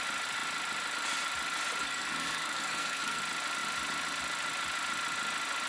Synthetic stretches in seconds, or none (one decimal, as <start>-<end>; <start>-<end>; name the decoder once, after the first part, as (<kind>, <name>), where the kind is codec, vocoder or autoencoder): 1.8-3.2 (codec, SNAC)